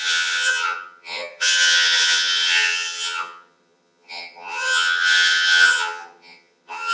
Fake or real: fake